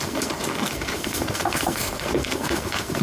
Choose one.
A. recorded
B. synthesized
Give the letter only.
B